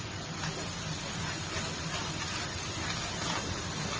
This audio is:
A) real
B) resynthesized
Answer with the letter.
A